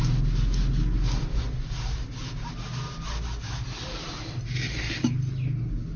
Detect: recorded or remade recorded